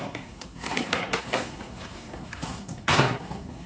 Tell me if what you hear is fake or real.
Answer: fake